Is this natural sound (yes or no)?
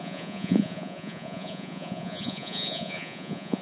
no